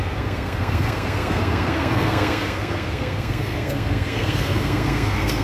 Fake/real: fake